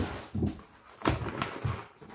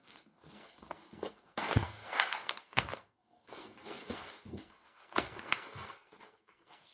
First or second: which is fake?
second